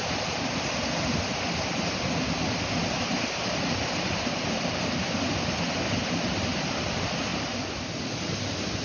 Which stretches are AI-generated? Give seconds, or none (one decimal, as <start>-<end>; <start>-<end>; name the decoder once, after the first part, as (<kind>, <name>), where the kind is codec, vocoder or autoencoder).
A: none